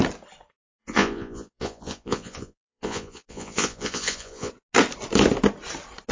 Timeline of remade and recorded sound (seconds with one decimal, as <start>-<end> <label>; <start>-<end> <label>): 0.0-0.8 recorded; 0.8-4.5 remade; 4.5-6.1 recorded